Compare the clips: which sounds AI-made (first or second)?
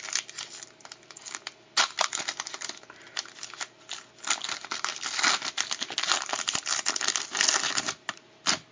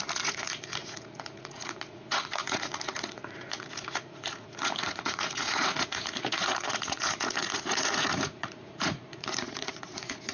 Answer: second